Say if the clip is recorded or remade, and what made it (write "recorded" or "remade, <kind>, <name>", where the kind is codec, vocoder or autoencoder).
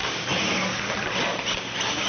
recorded